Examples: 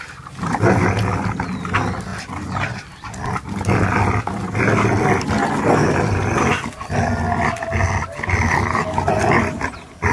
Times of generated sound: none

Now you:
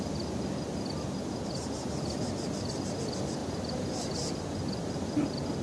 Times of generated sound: none